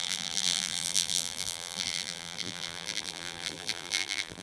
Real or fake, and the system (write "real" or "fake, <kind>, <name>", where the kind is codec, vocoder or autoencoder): fake, vocoder, BigVGAN v2